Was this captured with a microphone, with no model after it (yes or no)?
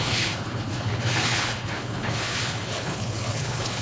no